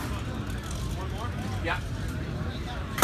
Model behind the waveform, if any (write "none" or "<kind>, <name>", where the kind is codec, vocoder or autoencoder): none